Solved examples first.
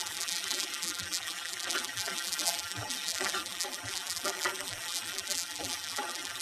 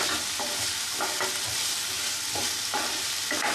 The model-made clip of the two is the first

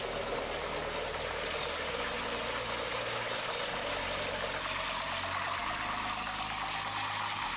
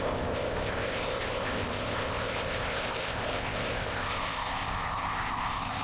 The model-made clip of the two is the second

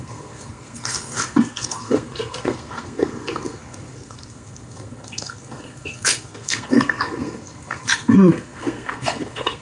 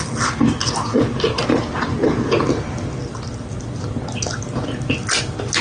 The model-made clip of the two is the first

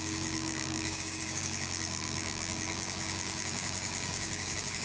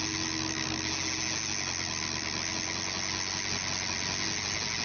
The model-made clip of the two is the first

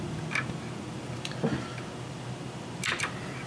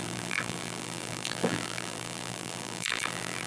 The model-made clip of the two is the second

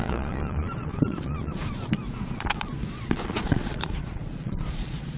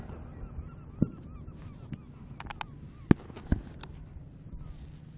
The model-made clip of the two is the first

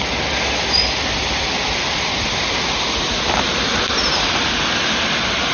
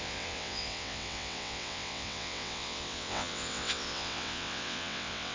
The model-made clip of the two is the second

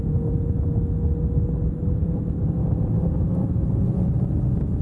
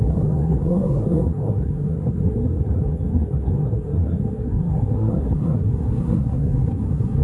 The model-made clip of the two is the second